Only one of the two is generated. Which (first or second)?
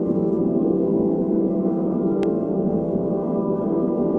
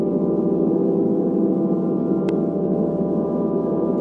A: first